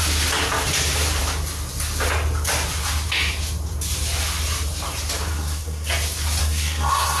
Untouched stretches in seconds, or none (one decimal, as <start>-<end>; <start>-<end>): 0.0-5.3; 5.9-6.4